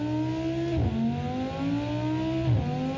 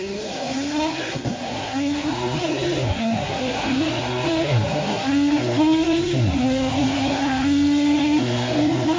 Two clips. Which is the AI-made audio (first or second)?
second